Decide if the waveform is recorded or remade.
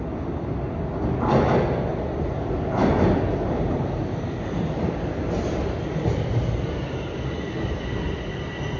recorded